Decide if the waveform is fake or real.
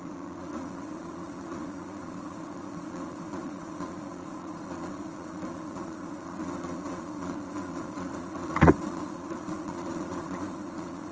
fake